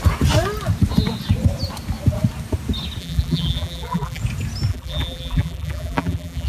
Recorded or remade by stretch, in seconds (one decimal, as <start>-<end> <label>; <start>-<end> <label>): 0.0-3.0 recorded; 3.0-4.2 remade; 4.2-4.7 recorded; 4.7-6.5 remade